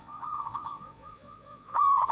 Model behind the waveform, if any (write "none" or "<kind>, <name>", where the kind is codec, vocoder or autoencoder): vocoder, Vocos